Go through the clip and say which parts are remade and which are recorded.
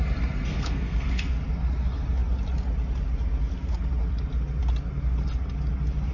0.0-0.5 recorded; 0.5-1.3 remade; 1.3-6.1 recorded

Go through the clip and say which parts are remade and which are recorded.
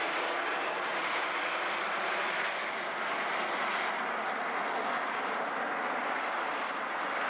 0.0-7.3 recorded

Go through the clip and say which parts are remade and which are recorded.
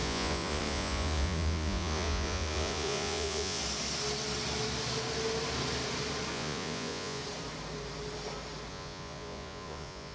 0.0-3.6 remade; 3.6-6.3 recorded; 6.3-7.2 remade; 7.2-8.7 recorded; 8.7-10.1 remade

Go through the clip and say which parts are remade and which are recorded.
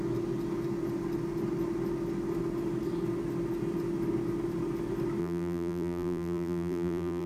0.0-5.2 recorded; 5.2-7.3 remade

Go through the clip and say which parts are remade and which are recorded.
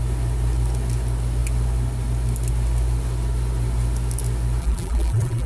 0.0-4.6 recorded; 4.6-5.5 remade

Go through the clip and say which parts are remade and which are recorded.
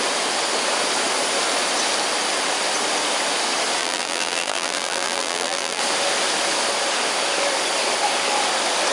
0.0-3.8 recorded; 3.8-5.8 remade; 5.8-8.9 recorded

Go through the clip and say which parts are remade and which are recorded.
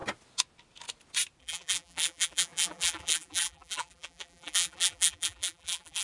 0.0-1.4 recorded; 1.4-6.0 remade